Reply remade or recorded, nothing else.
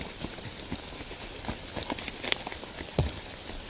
recorded